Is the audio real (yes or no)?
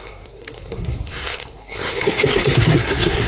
no